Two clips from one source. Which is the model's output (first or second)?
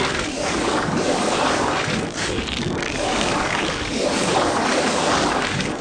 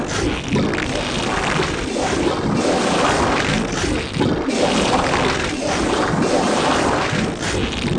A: first